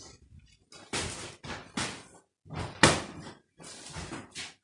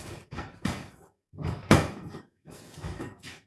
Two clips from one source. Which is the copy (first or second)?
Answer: second